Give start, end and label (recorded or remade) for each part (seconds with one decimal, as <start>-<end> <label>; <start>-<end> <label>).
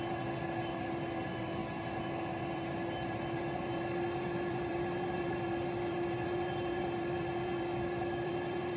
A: 0.0-1.6 remade; 1.6-2.4 recorded; 2.4-8.8 remade